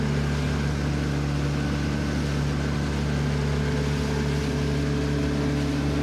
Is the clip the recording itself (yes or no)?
yes